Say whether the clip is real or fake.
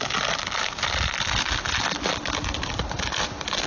real